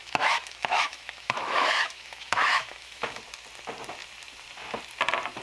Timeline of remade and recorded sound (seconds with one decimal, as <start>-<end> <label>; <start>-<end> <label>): 0.0-3.2 remade; 3.2-5.4 recorded